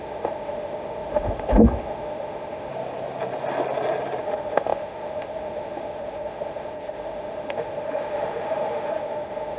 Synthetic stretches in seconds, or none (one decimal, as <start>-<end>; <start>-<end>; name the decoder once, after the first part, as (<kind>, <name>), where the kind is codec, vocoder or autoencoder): 0.0-2.7 (autoencoder, DAC-VAE); 4.2-9.6